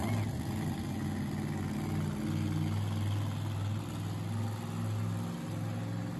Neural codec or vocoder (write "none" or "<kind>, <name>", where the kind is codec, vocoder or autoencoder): none